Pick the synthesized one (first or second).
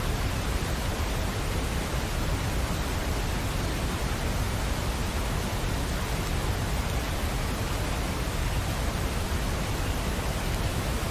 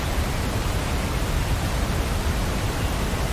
second